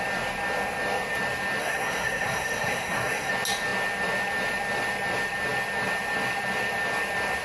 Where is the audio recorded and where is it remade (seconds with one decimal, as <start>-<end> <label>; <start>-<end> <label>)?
0.0-1.6 recorded; 1.6-3.3 remade; 3.3-7.4 recorded